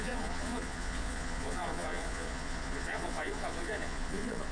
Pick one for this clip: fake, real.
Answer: fake